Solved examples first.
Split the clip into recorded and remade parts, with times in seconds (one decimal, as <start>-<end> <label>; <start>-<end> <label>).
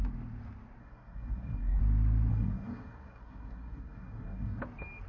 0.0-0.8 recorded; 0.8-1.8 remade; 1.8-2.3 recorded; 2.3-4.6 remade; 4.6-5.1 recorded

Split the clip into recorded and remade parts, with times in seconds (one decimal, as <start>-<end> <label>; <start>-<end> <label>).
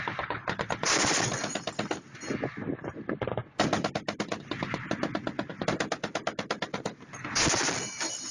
0.0-8.3 recorded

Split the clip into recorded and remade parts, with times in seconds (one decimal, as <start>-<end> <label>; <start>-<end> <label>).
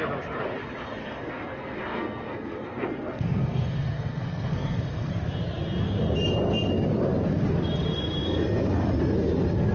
0.0-1.0 recorded; 1.0-5.1 remade; 5.1-9.7 recorded